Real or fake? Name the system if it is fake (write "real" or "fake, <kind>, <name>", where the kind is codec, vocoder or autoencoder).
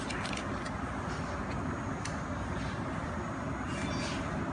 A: real